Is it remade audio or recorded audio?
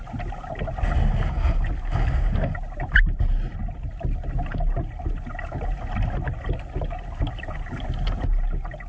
recorded